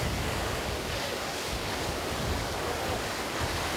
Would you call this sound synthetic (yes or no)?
yes